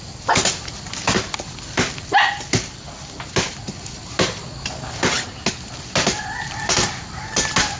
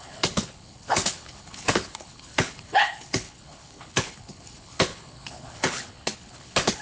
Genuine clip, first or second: first